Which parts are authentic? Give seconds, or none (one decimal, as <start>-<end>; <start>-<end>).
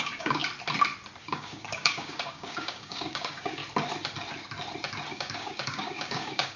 0.4-1.2; 3.6-5.1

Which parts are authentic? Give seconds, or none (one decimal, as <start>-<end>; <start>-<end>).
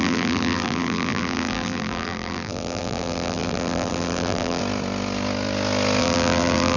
4.6-6.0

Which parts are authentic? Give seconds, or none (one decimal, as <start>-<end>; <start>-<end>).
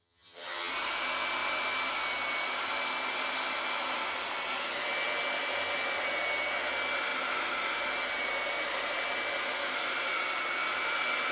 0.7-11.3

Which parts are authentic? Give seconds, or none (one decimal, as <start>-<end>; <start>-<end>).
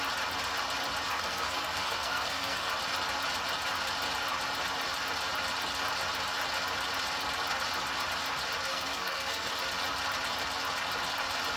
0.0-1.1; 2.7-8.7; 9.5-11.6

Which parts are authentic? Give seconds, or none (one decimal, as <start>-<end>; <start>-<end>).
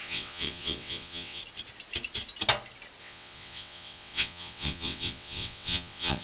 1.4-3.0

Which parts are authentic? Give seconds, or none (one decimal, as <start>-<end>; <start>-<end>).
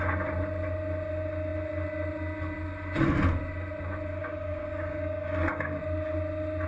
0.0-4.2; 5.8-6.7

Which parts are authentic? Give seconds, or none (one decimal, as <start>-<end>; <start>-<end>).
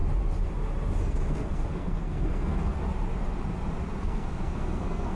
0.0-1.0; 2.8-4.0